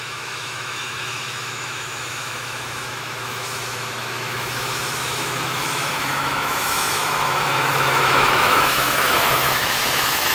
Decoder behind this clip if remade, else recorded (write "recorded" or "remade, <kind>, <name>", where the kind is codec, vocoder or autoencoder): remade, autoencoder, DAC-VAE